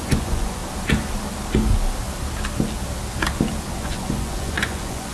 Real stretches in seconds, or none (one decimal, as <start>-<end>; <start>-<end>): 0.6-3.7